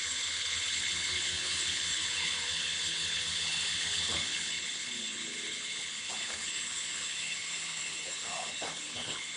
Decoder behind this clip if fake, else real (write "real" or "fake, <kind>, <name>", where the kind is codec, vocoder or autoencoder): fake, codec, HILCodec